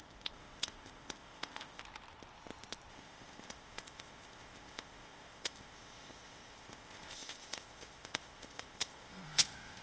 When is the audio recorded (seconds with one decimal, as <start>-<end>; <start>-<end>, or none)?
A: 1.8-2.9